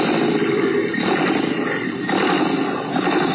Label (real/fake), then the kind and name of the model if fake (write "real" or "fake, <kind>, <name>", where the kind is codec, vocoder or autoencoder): fake, vocoder, BigVGAN v2